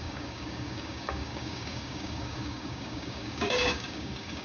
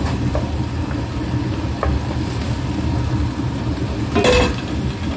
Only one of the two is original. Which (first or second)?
second